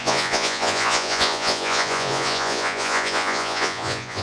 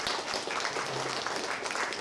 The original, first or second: second